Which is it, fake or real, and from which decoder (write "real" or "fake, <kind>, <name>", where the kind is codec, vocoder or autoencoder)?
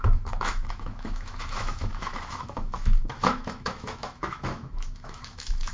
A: fake, autoencoder, DAC-VAE